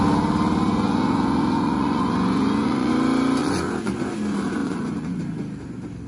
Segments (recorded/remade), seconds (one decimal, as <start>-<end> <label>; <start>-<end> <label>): 0.0-0.7 recorded; 0.7-2.9 remade; 2.9-3.4 recorded; 3.4-4.1 remade; 4.1-4.6 recorded; 4.6-5.2 remade; 5.2-6.1 recorded